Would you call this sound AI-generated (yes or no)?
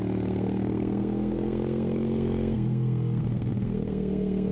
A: yes